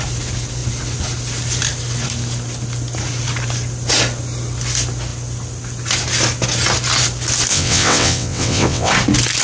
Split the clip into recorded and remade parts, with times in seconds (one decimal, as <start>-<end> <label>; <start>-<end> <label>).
0.0-7.5 recorded; 7.5-8.9 remade; 8.9-9.4 recorded